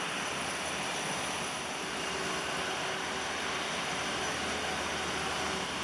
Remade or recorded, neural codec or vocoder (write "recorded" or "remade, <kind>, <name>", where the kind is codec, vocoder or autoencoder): recorded